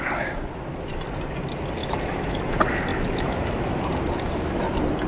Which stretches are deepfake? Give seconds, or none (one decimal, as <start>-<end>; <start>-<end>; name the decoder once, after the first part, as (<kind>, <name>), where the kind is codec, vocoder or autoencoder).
1.8-2.4 (autoencoder, DAC-VAE); 2.9-3.9